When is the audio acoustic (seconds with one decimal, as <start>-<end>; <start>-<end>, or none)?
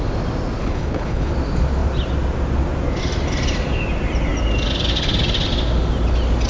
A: 0.0-0.6; 1.3-6.5